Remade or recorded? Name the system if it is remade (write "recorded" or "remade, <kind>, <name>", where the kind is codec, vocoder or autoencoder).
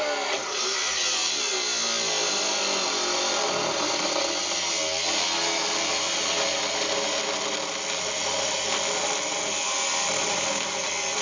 recorded